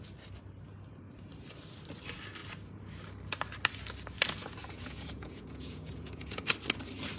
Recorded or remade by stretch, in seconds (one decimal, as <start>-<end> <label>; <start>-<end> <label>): 0.0-4.6 recorded; 4.6-6.4 remade; 6.4-7.2 recorded